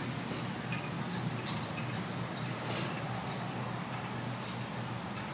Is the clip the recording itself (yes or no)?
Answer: yes